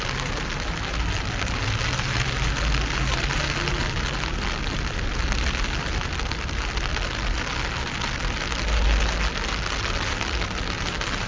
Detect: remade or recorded recorded